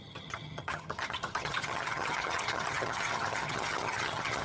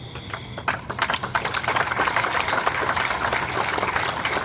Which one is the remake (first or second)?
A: first